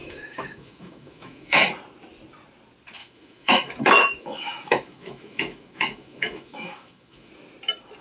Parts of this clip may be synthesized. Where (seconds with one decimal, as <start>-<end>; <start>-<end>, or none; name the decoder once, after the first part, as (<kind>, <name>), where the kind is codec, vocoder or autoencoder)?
0.0-1.6 (autoencoder, DAC-VAE); 3.0-7.3